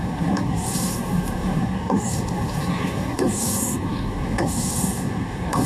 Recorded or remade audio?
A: remade